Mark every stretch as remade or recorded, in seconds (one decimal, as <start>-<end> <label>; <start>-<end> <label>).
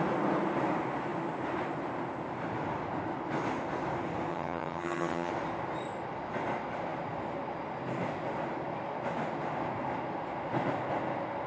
0.0-4.3 recorded; 4.3-5.3 remade; 5.3-11.5 recorded